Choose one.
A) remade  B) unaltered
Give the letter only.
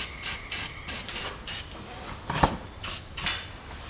B